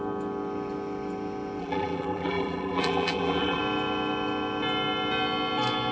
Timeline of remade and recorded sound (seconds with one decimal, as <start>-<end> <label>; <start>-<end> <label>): 0.0-1.6 recorded; 1.6-3.6 remade; 3.6-5.9 recorded